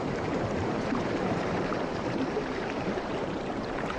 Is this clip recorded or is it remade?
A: remade